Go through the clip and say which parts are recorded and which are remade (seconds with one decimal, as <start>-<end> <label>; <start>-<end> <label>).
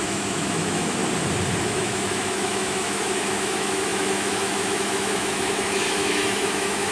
0.0-1.0 remade; 1.0-1.6 recorded; 1.6-6.9 remade